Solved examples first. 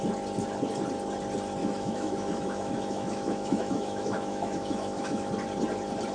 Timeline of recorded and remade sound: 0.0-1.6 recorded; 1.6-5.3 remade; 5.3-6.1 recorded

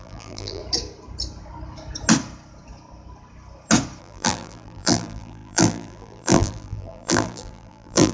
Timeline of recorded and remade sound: 0.0-0.6 remade; 0.6-4.0 recorded; 4.0-8.1 remade

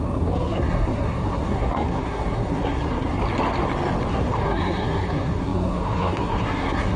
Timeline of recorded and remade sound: 0.0-3.2 remade; 3.2-4.1 recorded; 4.1-7.0 remade